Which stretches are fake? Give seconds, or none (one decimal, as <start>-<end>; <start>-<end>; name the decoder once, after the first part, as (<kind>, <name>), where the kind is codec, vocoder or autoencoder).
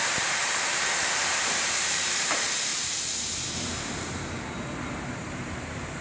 0.0-6.0 (vocoder, BigVGAN v2)